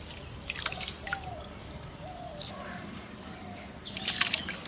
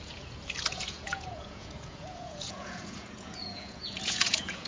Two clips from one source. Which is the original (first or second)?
first